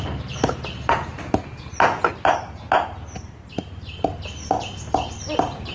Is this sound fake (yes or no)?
no